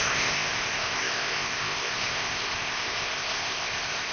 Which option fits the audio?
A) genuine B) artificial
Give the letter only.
B